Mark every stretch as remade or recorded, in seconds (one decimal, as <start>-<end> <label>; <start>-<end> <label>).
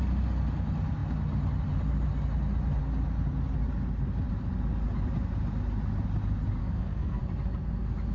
0.0-6.6 recorded; 6.6-7.2 remade; 7.2-8.1 recorded